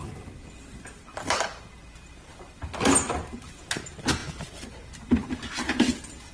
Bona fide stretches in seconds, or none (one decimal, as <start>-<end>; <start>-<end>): 3.8-4.2